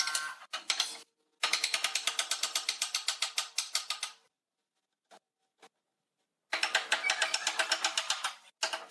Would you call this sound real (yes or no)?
yes